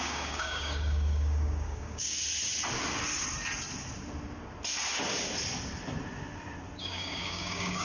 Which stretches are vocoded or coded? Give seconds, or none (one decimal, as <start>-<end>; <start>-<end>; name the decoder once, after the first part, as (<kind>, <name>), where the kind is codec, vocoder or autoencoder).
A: 0.0-2.2 (codec, DAC); 6.8-7.8